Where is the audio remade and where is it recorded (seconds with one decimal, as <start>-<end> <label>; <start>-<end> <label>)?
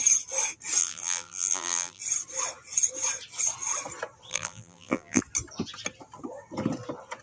0.0-0.8 recorded; 0.8-2.0 remade; 2.0-4.3 recorded; 4.3-5.2 remade; 5.2-7.2 recorded